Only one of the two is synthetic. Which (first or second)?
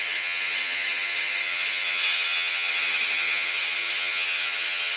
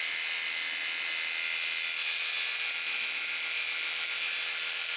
first